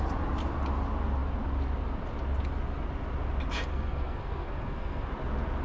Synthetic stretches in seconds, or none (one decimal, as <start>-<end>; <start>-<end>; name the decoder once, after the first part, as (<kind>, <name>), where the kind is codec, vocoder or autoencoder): 3.7-5.1 (codec, SNAC)